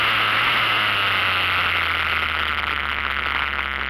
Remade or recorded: recorded